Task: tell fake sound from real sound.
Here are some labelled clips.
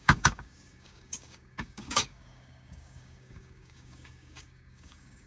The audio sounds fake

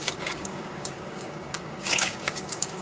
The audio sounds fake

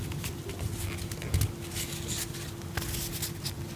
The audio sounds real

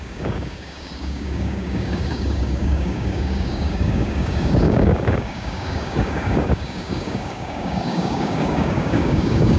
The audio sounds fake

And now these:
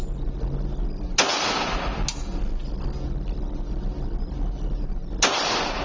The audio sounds real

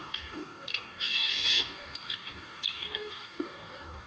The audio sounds fake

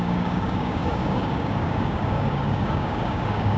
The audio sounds fake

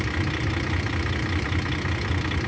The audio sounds real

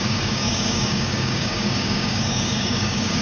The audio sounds fake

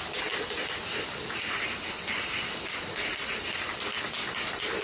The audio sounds real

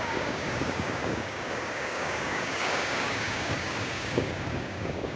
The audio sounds fake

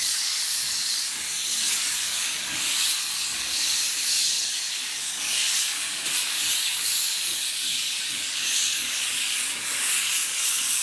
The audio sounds fake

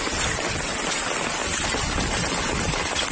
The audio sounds real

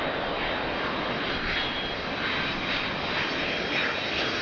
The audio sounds real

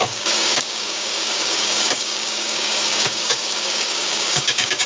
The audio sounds fake